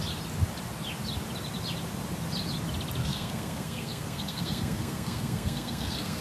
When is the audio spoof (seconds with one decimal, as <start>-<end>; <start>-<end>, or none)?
3.0-6.2